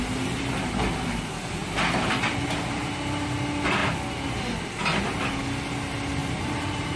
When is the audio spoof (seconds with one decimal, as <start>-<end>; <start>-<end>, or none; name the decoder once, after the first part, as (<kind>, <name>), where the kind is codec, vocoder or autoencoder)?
6.2-7.0 (vocoder, BigVGAN v2)

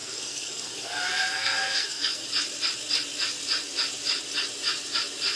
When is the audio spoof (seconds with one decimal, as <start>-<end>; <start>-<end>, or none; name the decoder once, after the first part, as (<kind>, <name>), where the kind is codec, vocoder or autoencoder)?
0.0-2.2 (codec, SNAC)

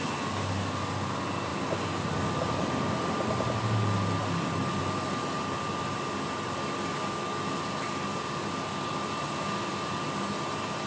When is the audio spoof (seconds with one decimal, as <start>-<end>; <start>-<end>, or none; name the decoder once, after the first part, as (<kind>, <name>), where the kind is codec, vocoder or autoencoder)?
none

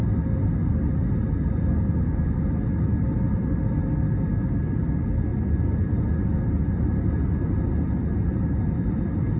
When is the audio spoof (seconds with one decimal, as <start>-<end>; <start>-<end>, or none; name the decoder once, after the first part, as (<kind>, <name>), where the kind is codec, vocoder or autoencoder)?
none

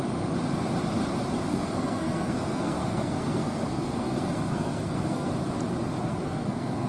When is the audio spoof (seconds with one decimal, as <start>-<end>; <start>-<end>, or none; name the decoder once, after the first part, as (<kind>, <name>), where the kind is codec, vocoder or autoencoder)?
1.5-5.3 (codec, SNAC); 6.0-6.9

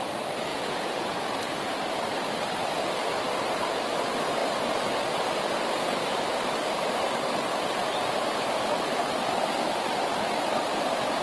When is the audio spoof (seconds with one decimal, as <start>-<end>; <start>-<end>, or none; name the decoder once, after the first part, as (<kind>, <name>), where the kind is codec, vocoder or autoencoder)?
0.5-1.1 (vocoder, Vocos)